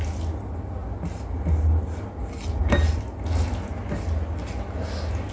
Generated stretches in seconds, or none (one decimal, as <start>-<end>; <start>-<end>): none